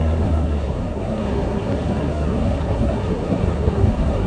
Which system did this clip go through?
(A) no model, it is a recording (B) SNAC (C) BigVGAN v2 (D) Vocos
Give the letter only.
B